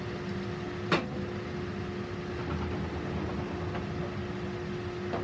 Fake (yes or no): no